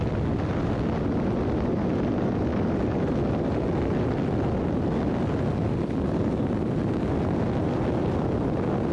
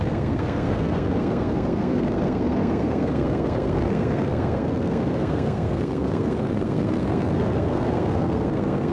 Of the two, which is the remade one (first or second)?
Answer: second